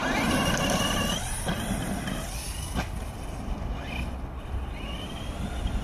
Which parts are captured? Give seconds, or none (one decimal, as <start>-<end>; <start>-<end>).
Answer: 0.0-5.8